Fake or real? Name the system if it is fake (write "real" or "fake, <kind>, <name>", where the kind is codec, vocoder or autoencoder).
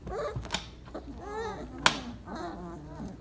real